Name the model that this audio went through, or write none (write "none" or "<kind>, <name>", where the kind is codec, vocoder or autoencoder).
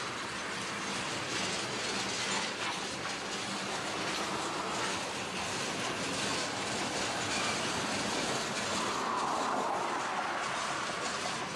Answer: none